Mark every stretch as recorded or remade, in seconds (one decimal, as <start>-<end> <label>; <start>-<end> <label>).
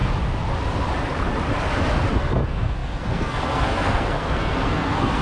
0.0-2.1 recorded; 2.1-5.2 remade